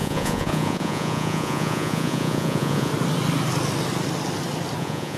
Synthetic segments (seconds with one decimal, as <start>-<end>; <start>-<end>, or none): 0.0-2.9; 4.8-5.2